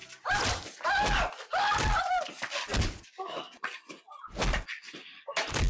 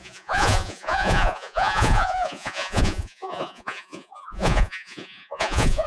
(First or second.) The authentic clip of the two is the first